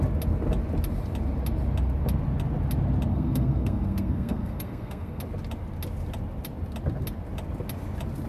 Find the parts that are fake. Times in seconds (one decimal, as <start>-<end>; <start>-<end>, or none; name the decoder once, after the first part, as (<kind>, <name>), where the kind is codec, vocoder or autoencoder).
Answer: 3.1-5.2 (codec, SNAC)